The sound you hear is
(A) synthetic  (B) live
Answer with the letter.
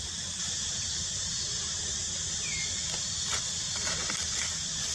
B